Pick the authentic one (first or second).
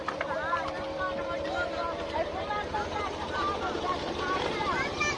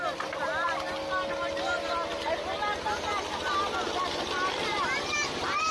second